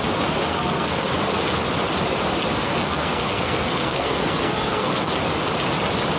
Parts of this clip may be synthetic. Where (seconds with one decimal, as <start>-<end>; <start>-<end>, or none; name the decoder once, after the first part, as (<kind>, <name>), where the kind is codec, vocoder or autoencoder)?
0.4-1.1 (codec, SNAC); 2.6-5.1